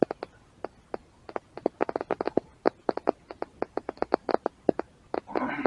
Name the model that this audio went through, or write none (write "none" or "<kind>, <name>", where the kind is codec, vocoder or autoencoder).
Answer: none